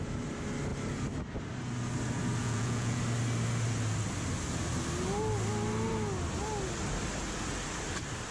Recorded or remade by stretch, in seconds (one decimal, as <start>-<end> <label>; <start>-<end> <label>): 0.0-2.4 recorded; 2.4-3.0 remade; 3.0-8.3 recorded